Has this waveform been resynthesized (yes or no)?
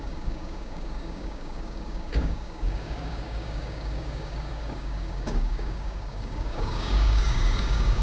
yes